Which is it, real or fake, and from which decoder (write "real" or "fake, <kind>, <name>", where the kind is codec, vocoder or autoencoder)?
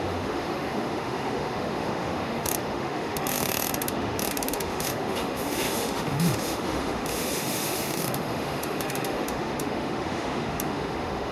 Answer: fake, autoencoder, DAC-VAE